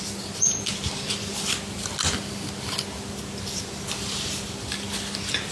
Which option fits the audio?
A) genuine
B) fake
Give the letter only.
A